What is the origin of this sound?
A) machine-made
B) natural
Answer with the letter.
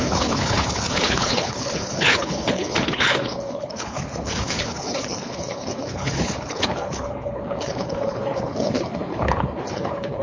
A